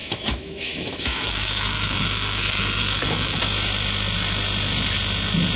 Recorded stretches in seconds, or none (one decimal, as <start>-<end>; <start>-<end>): 3.4-5.6